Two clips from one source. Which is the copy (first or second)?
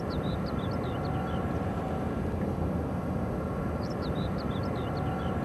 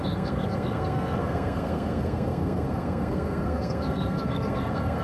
second